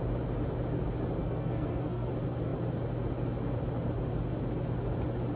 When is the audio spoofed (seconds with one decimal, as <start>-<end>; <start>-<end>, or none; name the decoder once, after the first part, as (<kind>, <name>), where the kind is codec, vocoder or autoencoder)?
1.2-2.1 (codec, SNAC)